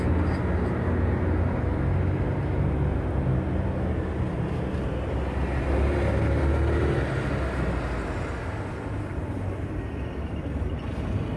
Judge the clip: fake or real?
real